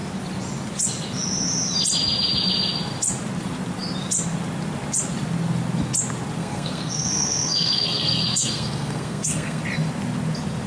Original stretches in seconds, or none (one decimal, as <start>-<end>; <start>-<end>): 0.0-6.4; 9.6-10.7